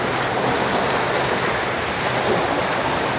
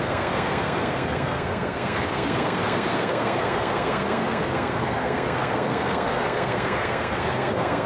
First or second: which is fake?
second